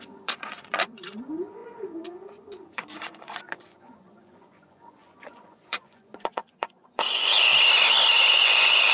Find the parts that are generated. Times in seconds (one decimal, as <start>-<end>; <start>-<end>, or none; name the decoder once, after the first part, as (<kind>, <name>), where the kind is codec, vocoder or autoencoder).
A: 0.0-7.5 (vocoder, Vocos); 8.3-8.9